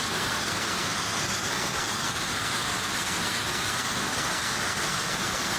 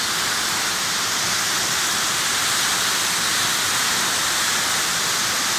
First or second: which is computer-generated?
first